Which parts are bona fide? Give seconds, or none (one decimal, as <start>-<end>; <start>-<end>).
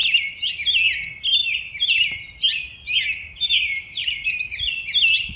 0.0-1.4; 4.3-5.4